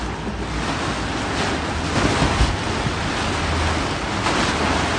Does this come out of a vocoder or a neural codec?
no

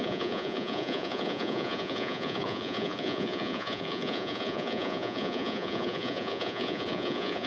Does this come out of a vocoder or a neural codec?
yes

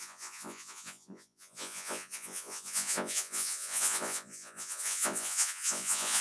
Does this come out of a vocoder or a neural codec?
yes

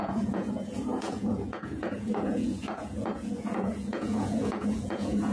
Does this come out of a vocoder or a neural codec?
yes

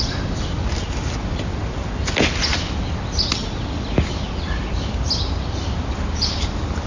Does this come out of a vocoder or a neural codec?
no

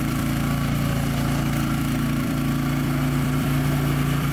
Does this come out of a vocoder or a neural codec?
yes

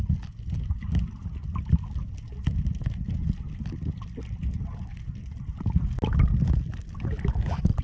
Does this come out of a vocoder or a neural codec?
no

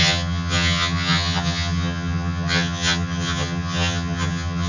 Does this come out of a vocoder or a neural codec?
yes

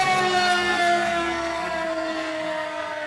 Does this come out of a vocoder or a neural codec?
yes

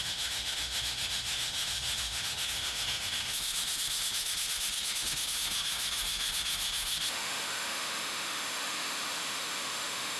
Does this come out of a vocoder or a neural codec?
yes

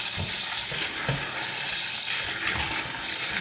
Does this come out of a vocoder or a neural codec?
no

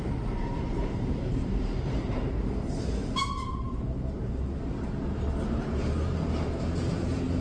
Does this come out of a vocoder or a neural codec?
yes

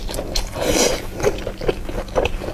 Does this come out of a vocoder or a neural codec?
no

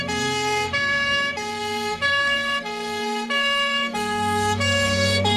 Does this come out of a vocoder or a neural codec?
yes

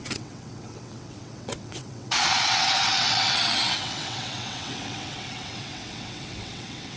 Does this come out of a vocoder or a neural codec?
yes